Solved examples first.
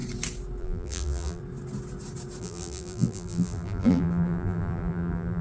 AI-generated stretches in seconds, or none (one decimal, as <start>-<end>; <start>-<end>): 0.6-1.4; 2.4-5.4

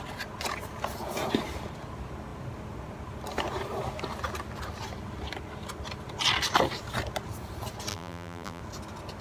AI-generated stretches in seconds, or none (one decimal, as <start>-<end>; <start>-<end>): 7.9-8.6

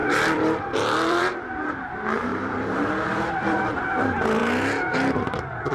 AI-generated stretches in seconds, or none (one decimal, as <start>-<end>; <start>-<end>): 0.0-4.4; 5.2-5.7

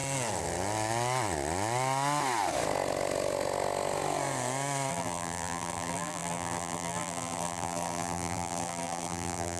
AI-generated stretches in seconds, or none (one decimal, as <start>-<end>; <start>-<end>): 4.9-9.6